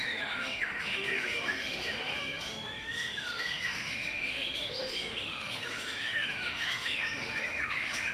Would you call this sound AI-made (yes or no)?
yes